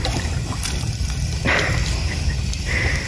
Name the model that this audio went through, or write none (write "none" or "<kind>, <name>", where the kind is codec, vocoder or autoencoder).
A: none